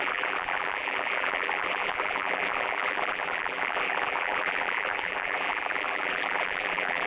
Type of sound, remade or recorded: remade